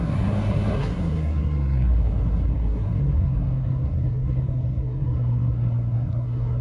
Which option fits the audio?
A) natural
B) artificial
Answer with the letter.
B